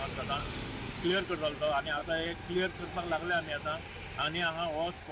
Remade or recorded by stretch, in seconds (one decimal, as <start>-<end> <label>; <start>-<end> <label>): 0.0-0.4 recorded; 0.4-0.9 remade; 0.9-5.1 recorded